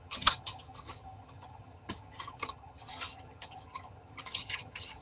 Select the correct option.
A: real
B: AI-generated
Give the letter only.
B